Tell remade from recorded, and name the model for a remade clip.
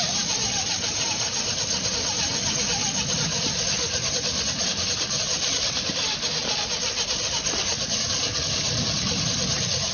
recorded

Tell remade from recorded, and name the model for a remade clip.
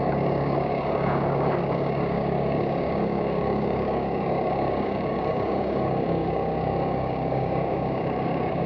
remade, codec, DAC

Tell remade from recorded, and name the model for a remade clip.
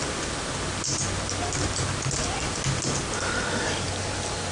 recorded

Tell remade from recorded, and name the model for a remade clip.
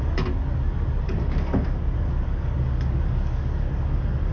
remade, codec, DAC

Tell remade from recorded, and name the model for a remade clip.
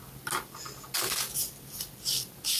recorded